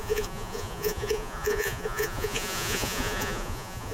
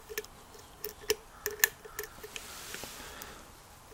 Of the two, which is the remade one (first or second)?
first